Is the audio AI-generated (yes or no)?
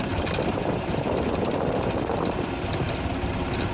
no